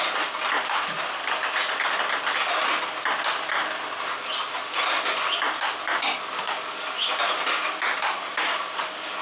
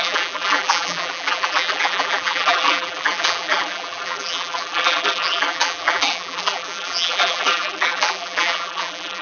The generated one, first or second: second